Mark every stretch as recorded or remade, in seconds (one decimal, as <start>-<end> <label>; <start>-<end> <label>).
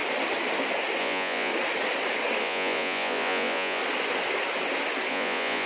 0.0-1.0 recorded; 1.0-1.5 remade; 1.5-2.4 recorded; 2.4-3.8 remade; 3.8-5.1 recorded; 5.1-5.7 remade